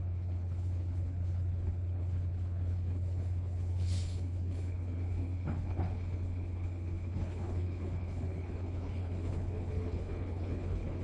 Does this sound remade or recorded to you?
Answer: remade